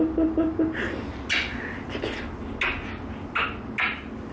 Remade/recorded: recorded